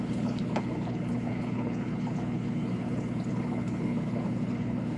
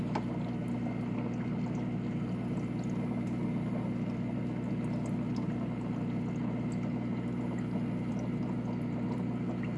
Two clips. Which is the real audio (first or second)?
second